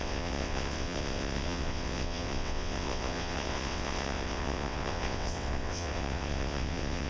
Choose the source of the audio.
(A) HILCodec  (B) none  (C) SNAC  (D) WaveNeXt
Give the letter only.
D